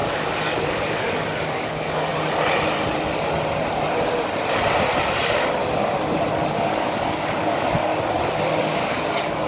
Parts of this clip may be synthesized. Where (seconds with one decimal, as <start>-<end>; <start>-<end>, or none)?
0.0-2.1; 6.5-7.9; 8.6-9.5